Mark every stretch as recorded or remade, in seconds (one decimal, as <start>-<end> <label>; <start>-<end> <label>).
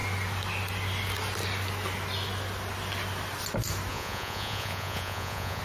0.0-3.9 recorded; 3.9-5.6 remade